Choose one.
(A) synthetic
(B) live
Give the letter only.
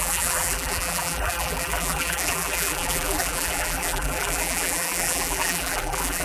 A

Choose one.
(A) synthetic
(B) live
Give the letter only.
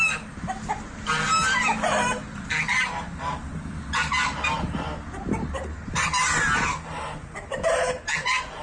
A